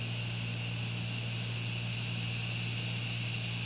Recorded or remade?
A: recorded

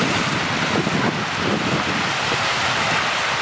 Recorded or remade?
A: recorded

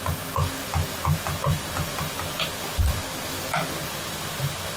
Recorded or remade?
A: recorded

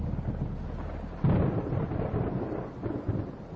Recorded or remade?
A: recorded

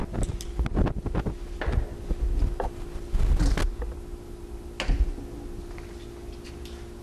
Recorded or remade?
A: recorded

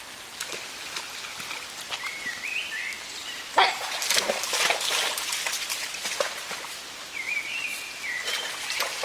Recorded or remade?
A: recorded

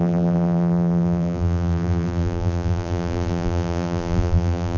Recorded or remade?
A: remade